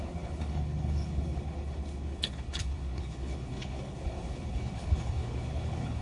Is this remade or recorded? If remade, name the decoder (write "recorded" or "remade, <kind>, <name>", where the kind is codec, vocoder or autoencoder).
remade, codec, HILCodec